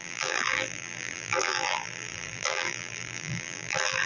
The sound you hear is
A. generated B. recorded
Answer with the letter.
A